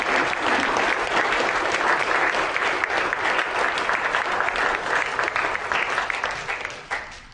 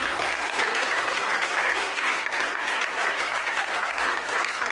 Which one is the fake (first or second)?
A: second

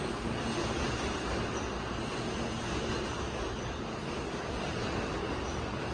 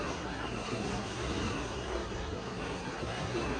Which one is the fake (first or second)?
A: second